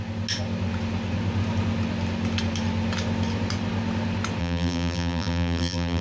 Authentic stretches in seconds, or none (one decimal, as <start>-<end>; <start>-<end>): 0.0-4.4